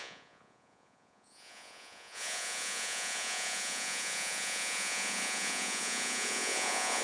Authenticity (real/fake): fake